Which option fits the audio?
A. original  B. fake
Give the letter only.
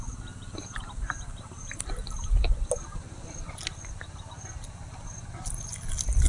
A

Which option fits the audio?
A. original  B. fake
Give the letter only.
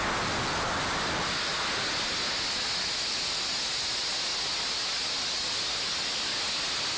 A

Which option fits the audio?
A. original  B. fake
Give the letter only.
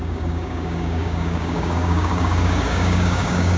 B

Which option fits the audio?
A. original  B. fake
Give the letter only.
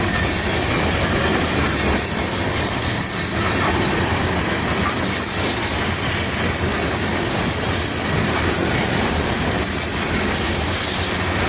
A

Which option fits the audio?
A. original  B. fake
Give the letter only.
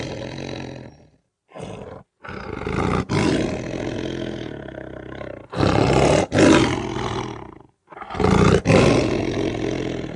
A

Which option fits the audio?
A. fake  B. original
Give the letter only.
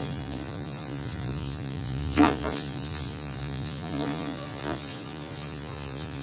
A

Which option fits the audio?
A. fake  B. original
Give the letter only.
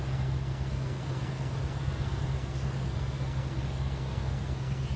A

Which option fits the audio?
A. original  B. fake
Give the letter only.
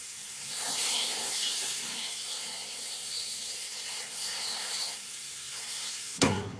B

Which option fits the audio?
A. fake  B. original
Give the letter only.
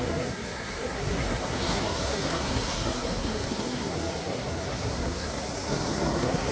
A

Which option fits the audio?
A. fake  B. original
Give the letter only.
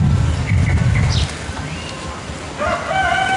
B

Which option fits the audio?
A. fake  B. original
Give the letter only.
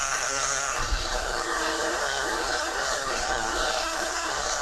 A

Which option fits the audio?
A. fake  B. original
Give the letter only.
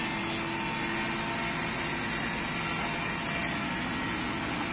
B